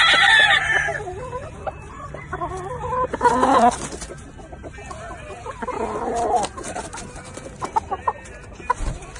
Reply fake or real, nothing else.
real